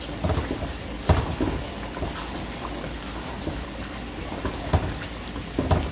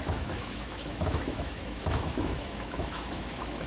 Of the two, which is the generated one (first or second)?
second